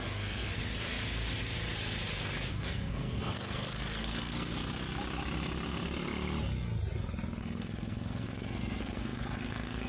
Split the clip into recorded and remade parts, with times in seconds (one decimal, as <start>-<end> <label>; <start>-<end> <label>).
0.0-0.6 remade; 0.6-2.5 recorded; 2.5-4.5 remade; 4.5-7.4 recorded; 7.4-9.9 remade